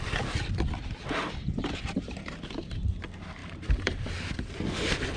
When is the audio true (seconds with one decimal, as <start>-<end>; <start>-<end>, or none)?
0.0-1.4; 3.0-3.4; 4.0-5.2